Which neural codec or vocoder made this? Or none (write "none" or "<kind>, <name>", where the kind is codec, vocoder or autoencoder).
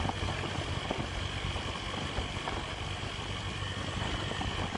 none